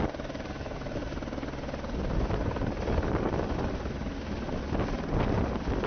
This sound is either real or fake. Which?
real